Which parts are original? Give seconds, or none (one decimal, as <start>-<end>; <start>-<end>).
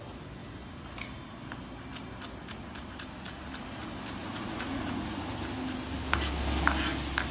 0.0-4.2; 5.2-7.3